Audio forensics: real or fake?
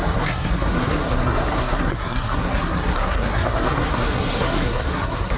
fake